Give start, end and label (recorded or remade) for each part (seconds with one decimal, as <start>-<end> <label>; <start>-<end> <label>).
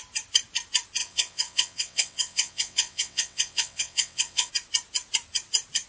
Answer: 0.0-1.0 recorded; 1.0-4.5 remade; 4.5-5.9 recorded